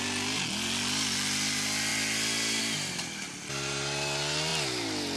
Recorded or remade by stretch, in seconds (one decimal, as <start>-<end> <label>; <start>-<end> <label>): 0.0-5.2 recorded

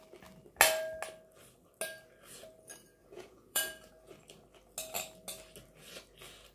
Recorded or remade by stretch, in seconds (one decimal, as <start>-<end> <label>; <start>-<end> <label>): 0.0-3.0 recorded; 3.0-3.9 remade; 3.9-6.5 recorded

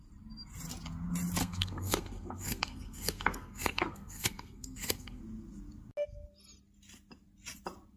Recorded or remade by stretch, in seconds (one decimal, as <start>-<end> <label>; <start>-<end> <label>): 0.0-1.4 recorded; 1.4-5.2 remade; 5.2-8.0 recorded

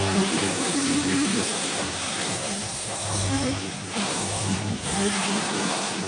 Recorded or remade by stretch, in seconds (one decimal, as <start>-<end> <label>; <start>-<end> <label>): 0.0-6.1 remade